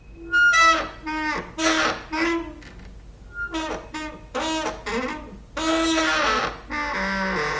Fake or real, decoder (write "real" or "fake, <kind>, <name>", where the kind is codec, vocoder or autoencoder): real